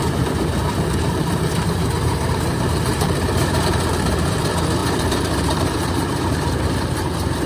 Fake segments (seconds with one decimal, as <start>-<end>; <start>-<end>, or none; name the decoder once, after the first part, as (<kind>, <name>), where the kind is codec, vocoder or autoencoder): 0.0-7.5 (vocoder, BigVGAN v2)